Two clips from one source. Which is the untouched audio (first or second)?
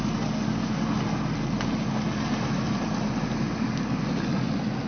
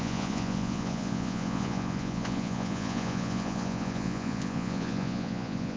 first